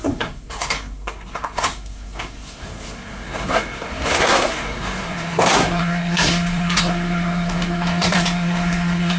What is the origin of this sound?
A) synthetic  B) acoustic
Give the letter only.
A